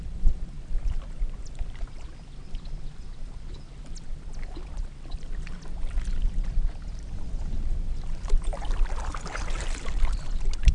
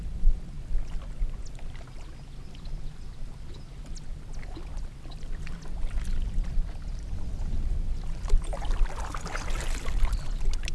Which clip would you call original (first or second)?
second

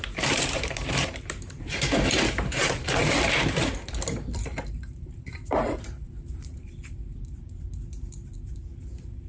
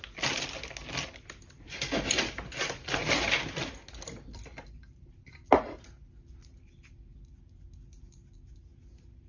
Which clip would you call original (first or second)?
second